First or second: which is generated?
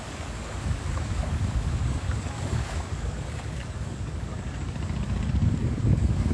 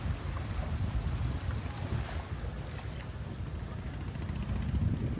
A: first